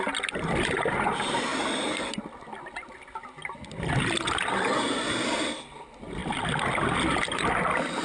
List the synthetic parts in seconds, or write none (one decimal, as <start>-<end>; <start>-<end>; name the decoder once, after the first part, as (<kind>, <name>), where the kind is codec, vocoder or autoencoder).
none